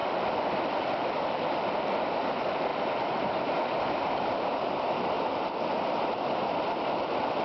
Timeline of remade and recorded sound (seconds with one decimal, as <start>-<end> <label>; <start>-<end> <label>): 0.0-2.7 remade; 2.7-6.8 recorded; 6.8-7.4 remade